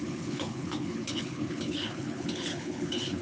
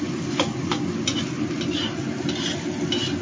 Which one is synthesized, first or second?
first